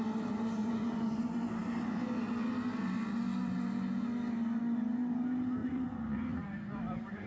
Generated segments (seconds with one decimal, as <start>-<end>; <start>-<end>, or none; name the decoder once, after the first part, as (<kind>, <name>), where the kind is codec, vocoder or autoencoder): 0.6-1.2 (vocoder, Vocos); 5.6-6.8